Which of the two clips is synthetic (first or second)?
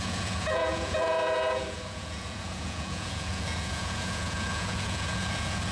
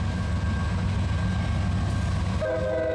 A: first